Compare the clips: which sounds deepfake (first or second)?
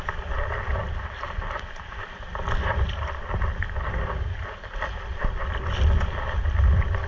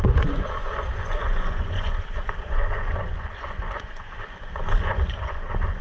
second